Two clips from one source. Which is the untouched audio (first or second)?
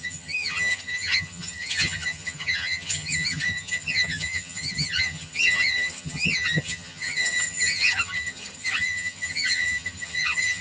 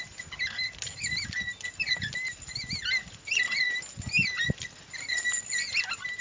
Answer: second